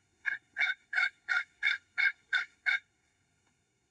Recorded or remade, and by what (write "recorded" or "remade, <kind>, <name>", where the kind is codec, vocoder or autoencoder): remade, codec, SNAC